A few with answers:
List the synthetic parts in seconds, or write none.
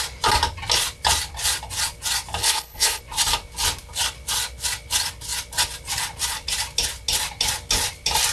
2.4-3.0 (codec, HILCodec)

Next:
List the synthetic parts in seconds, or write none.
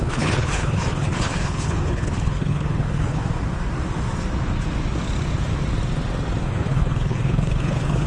0.0-3.2 (codec, HILCodec); 6.4-8.1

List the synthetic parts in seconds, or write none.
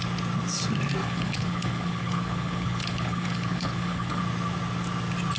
1.0-4.2 (codec, HILCodec)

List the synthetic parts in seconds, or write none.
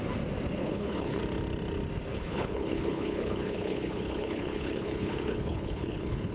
0.6-1.2 (codec, HILCodec); 2.1-6.3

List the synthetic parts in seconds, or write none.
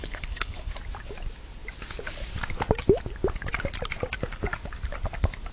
0.0-0.7 (codec, HILCodec)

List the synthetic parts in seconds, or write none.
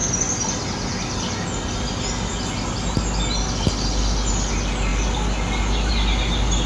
none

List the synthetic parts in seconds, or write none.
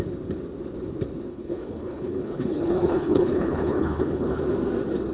1.3-4.4 (codec, HILCodec)